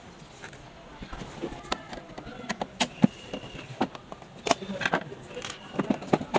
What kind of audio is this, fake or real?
real